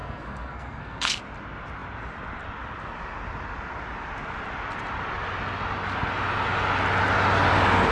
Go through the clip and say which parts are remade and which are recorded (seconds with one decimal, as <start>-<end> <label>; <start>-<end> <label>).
0.0-1.2 remade; 1.2-7.9 recorded